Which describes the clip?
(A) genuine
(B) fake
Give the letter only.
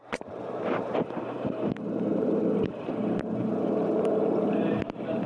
B